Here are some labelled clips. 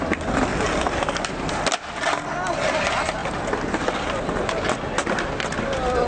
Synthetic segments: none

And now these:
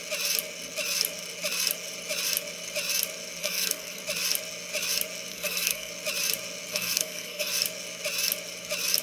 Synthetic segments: 3.4-4.0 (codec, SNAC); 5.3-5.9; 6.7-7.5

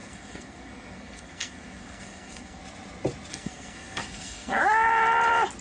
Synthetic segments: 0.0-2.6 (codec, SNAC); 3.3-4.6